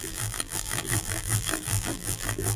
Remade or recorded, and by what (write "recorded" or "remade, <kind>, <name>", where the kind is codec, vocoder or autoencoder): remade, vocoder, BigVGAN v2